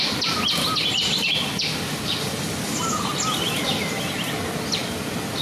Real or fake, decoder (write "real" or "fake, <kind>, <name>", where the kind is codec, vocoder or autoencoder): real